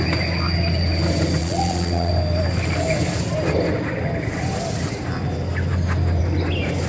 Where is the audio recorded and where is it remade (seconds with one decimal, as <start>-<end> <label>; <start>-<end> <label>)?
0.0-1.4 recorded; 1.4-2.1 remade; 2.1-6.9 recorded

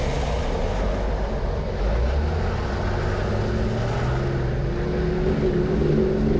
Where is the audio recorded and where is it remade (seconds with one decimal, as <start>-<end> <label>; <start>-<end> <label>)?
0.0-6.4 recorded

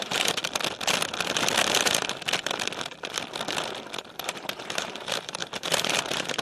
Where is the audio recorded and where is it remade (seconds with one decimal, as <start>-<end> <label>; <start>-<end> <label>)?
0.0-0.4 remade; 0.4-4.0 recorded; 4.0-6.4 remade

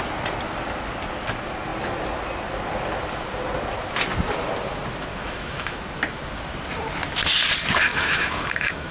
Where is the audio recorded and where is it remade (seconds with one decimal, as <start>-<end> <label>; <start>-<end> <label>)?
0.0-5.1 recorded; 5.1-5.8 remade; 5.8-7.9 recorded; 7.9-8.9 remade

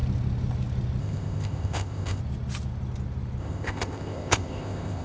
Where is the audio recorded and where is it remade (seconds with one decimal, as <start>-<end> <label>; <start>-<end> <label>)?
0.0-1.0 recorded; 1.0-2.2 remade; 2.2-3.4 recorded; 3.4-5.0 remade

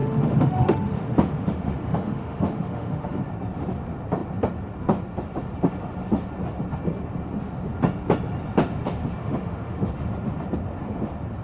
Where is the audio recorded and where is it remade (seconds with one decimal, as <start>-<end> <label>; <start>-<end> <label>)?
0.0-3.2 remade; 3.2-9.2 recorded; 9.2-9.9 remade; 9.9-11.4 recorded